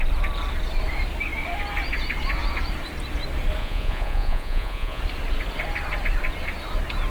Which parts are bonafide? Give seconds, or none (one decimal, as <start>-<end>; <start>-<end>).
0.0-3.6; 5.0-7.1